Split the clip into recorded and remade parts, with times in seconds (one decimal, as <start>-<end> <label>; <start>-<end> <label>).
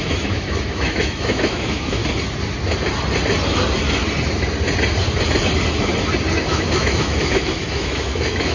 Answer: 0.0-2.0 remade; 2.0-6.4 recorded; 6.4-8.5 remade